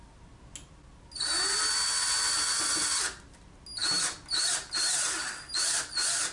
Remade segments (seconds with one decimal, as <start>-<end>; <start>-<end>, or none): none